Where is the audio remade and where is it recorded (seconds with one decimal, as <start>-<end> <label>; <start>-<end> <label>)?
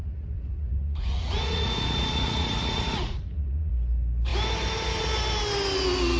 0.0-3.7 remade; 3.7-6.2 recorded